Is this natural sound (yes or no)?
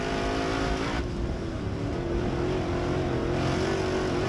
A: yes